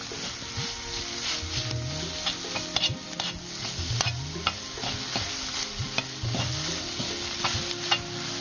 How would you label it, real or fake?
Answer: real